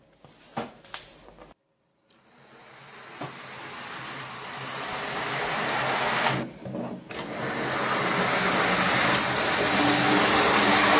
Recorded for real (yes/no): yes